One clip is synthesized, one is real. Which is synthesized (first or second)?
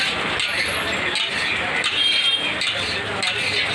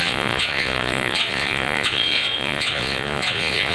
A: second